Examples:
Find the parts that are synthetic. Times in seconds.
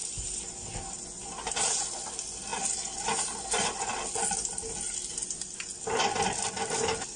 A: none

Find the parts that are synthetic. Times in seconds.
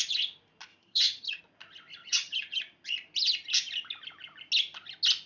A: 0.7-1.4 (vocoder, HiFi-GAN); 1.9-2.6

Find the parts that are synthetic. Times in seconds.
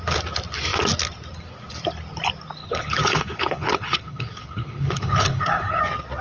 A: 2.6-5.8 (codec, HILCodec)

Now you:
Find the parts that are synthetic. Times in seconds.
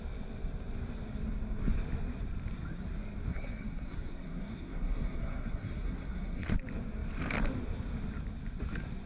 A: 3.3-6.5 (codec, SNAC)